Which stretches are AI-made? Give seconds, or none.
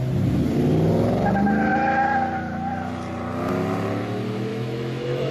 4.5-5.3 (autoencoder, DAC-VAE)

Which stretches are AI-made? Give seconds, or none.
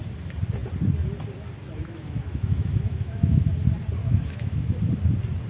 1.8-3.5 (autoencoder, DAC-VAE); 4.0-4.7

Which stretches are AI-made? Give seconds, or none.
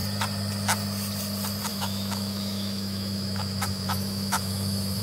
1.7-5.0 (autoencoder, DAC-VAE)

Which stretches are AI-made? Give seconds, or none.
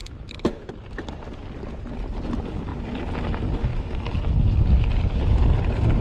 0.0-0.7 (autoencoder, DAC-VAE)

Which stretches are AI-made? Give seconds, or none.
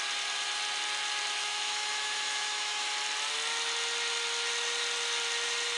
1.4-2.9 (autoencoder, DAC-VAE)